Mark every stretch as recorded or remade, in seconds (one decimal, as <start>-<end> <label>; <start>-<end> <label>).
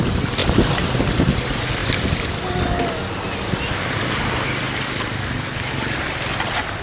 0.0-6.8 recorded